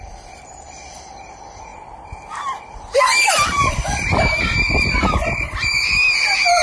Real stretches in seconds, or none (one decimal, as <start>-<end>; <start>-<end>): 0.0-6.6